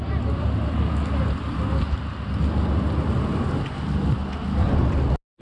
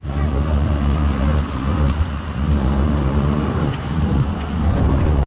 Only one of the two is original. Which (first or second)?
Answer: first